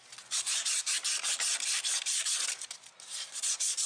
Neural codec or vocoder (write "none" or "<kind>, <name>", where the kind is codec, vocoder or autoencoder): none